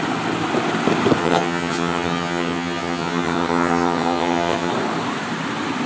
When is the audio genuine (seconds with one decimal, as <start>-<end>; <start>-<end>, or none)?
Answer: 0.0-1.2; 4.7-5.9